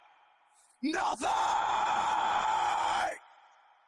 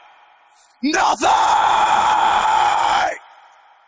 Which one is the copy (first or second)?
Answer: first